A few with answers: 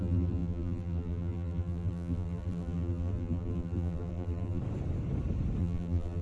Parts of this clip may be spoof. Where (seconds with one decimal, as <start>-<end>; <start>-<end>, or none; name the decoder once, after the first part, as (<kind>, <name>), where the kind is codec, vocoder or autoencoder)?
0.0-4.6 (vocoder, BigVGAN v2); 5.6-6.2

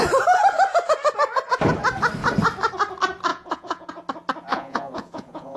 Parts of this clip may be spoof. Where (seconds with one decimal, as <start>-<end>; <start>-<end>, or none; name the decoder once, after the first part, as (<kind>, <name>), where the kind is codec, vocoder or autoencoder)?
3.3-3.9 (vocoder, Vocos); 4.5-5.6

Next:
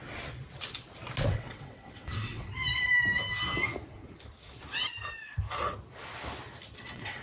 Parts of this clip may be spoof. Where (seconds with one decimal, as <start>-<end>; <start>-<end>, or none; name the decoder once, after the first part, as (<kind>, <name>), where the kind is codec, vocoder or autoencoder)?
1.3-2.5 (vocoder, WaveNeXt); 6.8-7.2

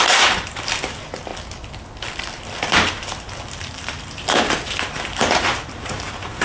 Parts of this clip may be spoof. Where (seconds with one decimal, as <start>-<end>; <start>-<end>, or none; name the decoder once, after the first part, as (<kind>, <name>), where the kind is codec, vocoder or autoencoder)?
0.0-1.3 (vocoder, BigVGAN v2); 3.5-6.4

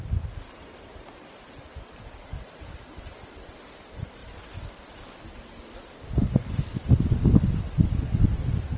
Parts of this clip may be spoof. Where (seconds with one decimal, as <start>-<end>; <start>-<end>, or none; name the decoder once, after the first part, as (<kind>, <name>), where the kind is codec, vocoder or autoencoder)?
none